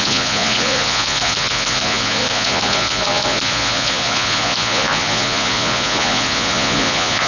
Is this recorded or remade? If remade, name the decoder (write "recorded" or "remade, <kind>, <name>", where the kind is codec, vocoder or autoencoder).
remade, vocoder, Vocos